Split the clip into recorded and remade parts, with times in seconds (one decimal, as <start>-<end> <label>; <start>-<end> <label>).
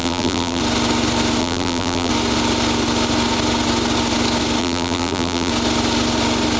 0.0-0.6 remade; 0.6-1.4 recorded; 1.4-2.1 remade; 2.1-4.6 recorded; 4.6-5.5 remade; 5.5-6.6 recorded